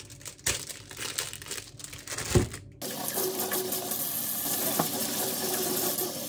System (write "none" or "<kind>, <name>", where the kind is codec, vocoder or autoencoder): none